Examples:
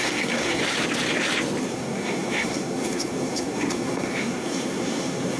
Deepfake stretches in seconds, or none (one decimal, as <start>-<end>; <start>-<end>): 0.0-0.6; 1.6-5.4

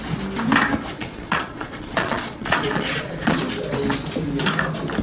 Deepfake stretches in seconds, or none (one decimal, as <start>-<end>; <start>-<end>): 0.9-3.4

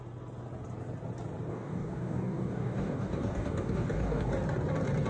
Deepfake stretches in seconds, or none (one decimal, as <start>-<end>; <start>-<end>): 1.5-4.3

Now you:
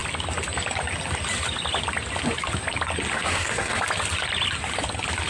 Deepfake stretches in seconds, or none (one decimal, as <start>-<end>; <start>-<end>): 3.1-3.8